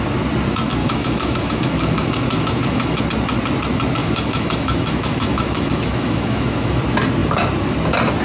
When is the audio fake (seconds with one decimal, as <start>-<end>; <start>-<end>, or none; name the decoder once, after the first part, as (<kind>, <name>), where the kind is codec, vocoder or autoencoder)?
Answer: 0.8-3.0 (autoencoder, DAC-VAE); 4.0-6.8